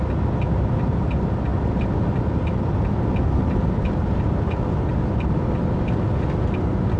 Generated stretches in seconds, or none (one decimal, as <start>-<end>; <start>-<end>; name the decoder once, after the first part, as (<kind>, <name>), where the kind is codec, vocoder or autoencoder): none